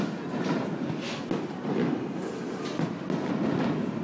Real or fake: real